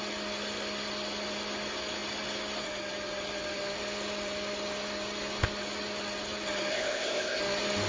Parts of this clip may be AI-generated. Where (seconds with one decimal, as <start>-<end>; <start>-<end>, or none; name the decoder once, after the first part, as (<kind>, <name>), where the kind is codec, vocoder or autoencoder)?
6.7-7.4 (codec, ZipCodec)